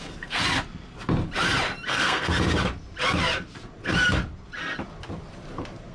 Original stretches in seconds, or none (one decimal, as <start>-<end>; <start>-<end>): 0.4-1.9; 2.3-5.9